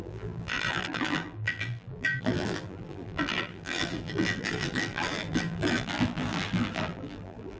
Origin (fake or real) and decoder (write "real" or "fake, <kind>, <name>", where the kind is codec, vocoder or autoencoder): fake, vocoder, BigVGAN v2